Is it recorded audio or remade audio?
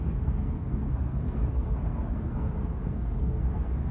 remade